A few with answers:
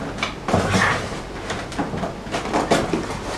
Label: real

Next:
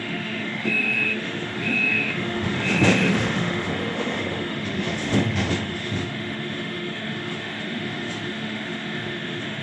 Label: fake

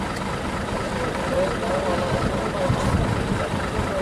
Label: real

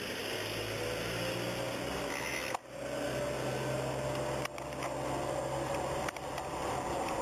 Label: real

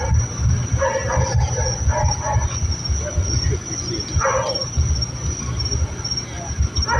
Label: real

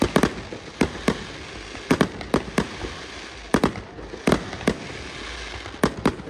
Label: real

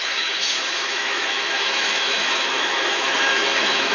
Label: fake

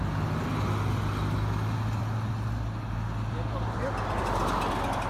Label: real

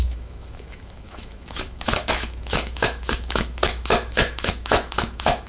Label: fake